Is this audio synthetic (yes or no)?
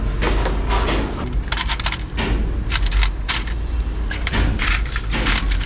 no